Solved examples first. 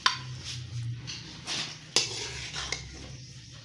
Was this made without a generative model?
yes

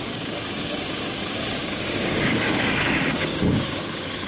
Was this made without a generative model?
no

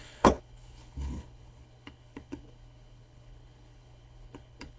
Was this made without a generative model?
no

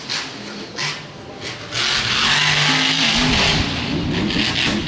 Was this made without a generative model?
yes